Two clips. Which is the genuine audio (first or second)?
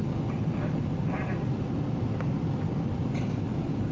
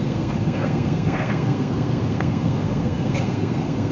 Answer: first